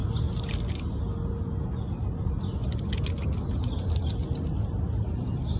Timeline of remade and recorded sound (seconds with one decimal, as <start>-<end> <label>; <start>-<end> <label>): 0.0-5.6 recorded